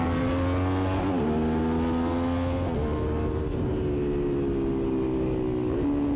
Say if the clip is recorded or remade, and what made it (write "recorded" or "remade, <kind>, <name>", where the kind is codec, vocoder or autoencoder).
recorded